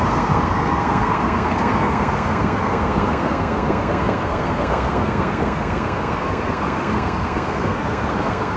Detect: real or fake fake